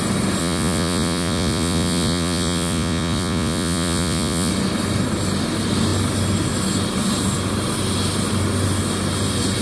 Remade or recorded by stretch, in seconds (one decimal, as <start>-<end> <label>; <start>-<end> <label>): 0.0-0.4 recorded; 0.4-4.5 remade; 4.5-9.6 recorded